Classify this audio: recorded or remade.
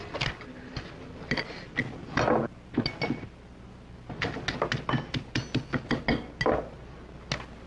recorded